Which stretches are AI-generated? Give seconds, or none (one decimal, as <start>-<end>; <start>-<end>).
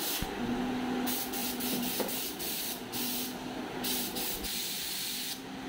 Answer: 1.4-3.6